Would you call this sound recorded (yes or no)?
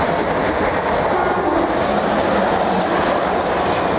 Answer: yes